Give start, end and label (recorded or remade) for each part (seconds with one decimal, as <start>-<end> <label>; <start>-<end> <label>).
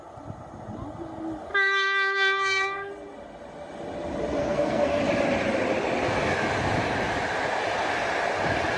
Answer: 0.0-1.5 recorded; 1.5-2.9 remade; 2.9-4.4 recorded; 4.4-5.0 remade; 5.0-8.8 recorded